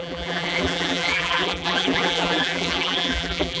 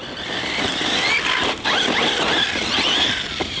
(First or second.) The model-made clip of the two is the first